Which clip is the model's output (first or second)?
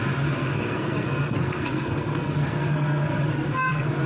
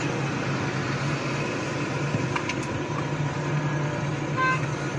first